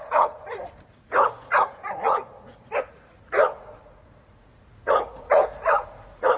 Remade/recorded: remade